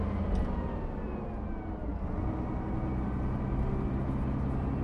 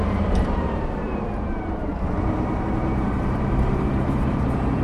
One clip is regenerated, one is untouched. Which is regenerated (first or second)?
second